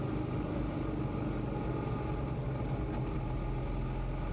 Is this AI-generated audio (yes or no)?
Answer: no